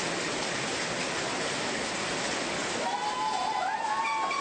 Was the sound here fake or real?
real